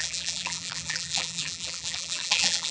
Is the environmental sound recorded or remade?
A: remade